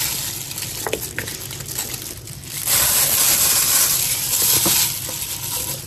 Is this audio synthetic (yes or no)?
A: no